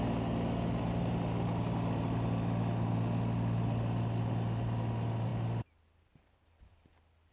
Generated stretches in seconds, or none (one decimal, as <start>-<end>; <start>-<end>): none